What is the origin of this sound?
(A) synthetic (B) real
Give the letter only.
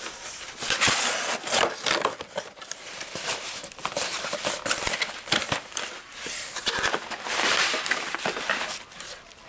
A